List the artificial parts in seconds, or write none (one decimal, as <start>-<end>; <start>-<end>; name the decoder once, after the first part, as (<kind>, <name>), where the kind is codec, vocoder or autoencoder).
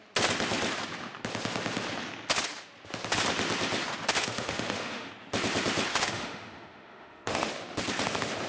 4.2-5.1 (autoencoder, DAC-VAE); 5.9-7.5